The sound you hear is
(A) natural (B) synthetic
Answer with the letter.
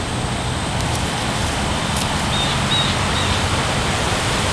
A